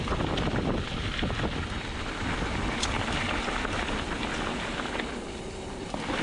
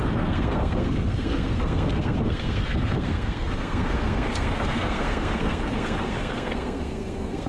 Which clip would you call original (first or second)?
first